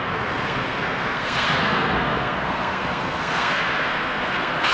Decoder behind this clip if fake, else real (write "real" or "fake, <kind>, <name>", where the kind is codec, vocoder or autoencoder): fake, codec, SNAC